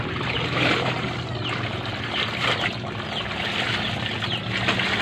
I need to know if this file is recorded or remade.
recorded